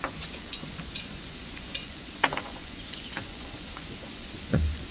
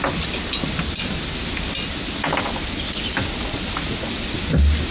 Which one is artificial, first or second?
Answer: first